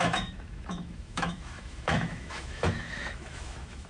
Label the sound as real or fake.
fake